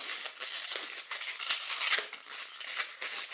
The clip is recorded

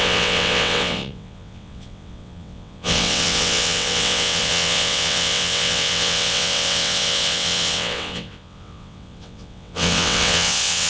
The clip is remade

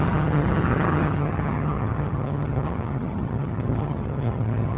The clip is remade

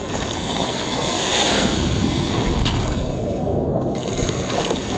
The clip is remade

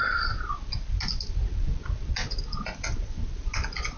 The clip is recorded